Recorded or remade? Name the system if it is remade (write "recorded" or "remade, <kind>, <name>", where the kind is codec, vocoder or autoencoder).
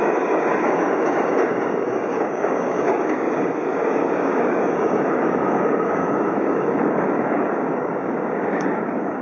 remade, codec, DAC